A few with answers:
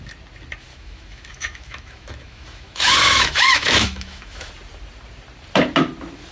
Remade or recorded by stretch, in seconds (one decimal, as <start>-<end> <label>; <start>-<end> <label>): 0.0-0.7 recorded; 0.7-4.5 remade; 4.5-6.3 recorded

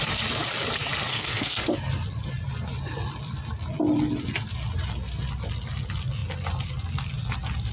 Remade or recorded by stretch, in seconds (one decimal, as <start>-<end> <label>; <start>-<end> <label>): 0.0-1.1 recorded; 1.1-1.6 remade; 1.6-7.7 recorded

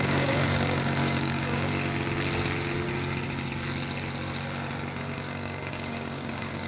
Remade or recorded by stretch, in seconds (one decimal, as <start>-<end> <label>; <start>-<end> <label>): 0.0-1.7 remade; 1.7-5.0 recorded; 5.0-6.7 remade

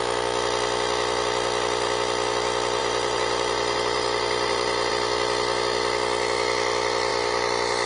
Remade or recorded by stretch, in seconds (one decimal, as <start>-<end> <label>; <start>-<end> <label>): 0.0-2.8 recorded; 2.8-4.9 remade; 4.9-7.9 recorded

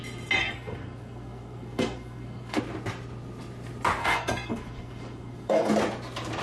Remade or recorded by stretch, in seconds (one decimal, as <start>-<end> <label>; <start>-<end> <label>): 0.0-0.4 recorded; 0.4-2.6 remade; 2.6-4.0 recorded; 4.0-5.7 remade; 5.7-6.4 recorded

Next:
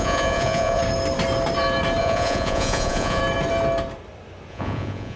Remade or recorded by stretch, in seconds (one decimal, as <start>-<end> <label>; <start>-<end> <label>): 0.0-0.8 remade; 0.8-2.0 recorded; 2.0-3.2 remade; 3.2-4.5 recorded; 4.5-5.2 remade